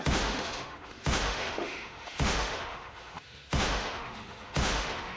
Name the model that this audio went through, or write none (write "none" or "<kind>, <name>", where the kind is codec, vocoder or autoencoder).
autoencoder, DAC-VAE